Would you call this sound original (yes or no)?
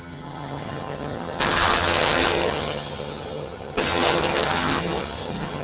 no